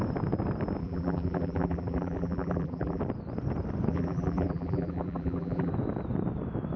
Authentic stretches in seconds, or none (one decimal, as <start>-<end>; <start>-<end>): 0.0-0.8; 3.0-3.9; 5.7-6.8